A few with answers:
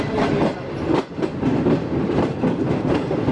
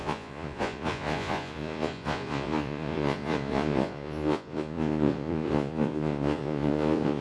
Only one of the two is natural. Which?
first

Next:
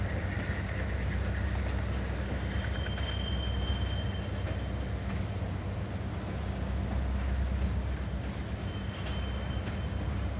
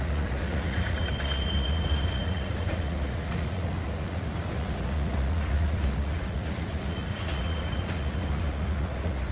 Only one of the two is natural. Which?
first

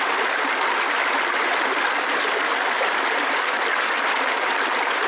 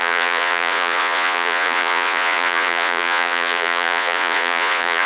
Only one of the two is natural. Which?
first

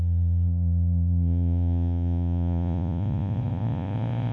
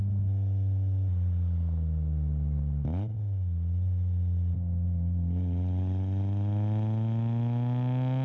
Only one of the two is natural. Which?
second